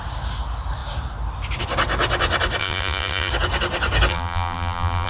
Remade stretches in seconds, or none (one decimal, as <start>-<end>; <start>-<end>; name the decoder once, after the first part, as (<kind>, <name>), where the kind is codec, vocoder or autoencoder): 2.6-3.3 (vocoder, BigVGAN v2); 4.1-5.1